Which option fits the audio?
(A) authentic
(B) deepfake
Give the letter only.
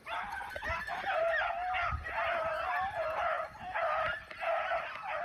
A